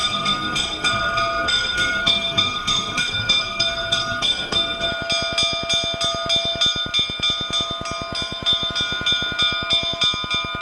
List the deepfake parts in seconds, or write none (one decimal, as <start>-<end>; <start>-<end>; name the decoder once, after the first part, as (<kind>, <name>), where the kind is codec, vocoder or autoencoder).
0.0-4.9 (codec, SNAC)